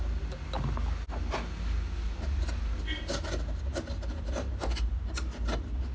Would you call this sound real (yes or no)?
yes